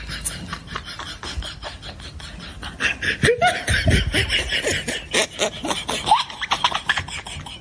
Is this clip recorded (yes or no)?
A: yes